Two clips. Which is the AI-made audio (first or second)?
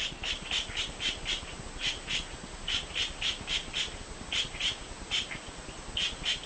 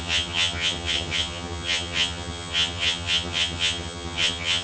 second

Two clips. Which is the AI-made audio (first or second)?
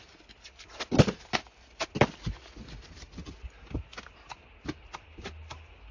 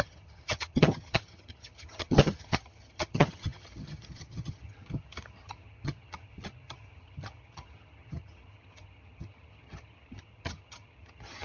second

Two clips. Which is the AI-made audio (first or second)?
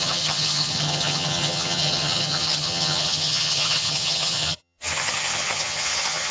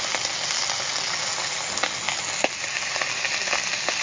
first